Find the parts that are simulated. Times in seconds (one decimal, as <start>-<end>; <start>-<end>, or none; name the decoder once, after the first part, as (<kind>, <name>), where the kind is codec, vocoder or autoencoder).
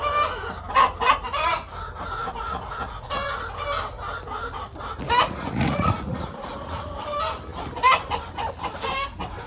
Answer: 2.2-3.4 (vocoder, Vocos); 5.2-6.9